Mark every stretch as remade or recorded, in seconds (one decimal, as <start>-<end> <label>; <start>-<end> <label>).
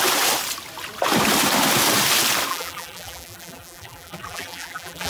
0.0-2.5 recorded; 2.5-5.1 remade